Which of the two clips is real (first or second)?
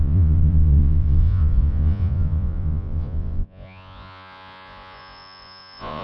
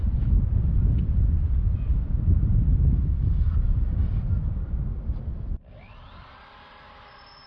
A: second